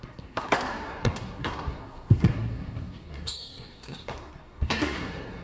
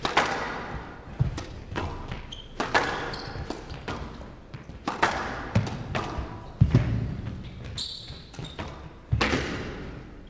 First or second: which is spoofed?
first